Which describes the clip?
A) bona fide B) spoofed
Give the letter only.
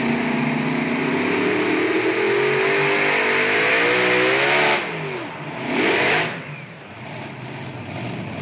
A